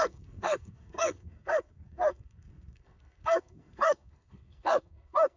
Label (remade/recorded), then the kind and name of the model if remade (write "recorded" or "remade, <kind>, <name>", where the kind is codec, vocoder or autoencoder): remade, codec, SNAC